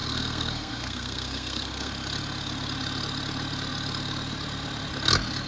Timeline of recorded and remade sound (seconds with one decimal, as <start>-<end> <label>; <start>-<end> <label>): 0.0-1.9 remade; 1.9-5.5 recorded